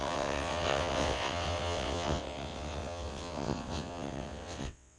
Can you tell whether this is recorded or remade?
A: remade